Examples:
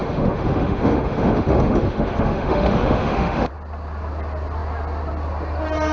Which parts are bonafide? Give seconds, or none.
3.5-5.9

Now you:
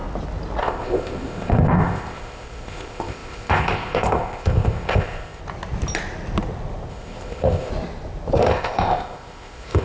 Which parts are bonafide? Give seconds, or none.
0.0-0.6; 5.4-6.9; 7.7-8.4